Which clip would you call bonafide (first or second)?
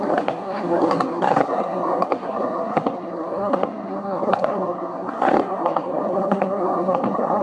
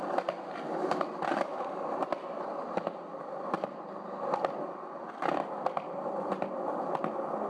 second